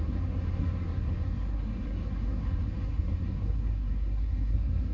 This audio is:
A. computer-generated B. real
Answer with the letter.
A